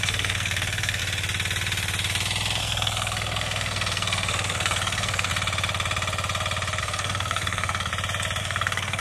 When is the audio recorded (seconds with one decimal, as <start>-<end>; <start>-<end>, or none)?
1.0-2.6; 5.3-6.8; 7.9-8.4